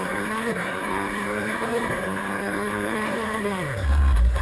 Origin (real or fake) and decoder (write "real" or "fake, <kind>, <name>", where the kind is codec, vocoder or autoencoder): fake, codec, SNAC